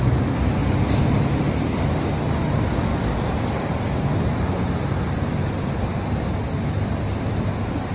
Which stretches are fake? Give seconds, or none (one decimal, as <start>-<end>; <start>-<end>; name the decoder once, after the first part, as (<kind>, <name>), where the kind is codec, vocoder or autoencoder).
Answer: none

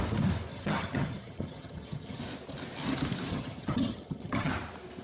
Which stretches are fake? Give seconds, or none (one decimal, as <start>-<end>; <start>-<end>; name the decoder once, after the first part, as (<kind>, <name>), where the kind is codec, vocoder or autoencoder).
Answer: 0.5-2.2 (vocoder, HiFi-GAN); 3.3-4.5

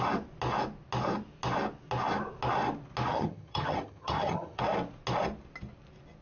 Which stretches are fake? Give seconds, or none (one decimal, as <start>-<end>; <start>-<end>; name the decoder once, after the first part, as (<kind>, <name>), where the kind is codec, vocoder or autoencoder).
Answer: 3.1-4.6 (vocoder, HiFi-GAN)